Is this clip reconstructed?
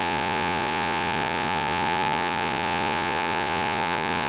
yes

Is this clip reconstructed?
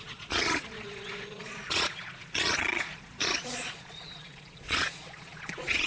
yes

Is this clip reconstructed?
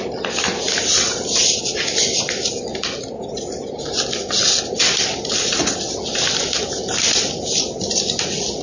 no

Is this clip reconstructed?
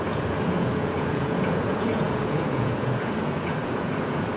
yes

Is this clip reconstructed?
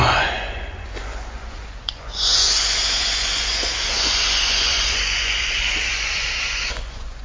yes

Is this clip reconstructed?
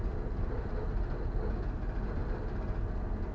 no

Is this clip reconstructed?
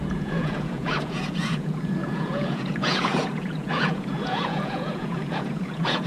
yes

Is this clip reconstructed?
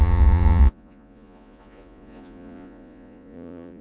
yes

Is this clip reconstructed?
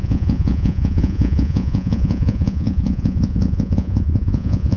yes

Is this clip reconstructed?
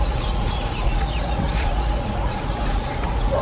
yes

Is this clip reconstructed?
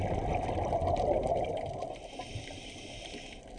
no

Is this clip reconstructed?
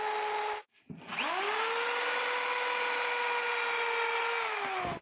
no